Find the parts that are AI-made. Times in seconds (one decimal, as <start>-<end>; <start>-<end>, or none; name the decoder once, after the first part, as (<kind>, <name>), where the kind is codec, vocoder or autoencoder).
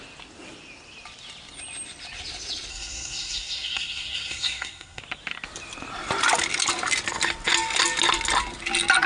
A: 2.7-5.0 (codec, SNAC)